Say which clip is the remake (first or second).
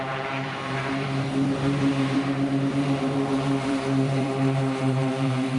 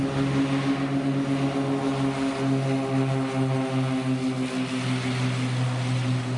first